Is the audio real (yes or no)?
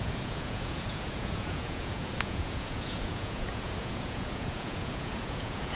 no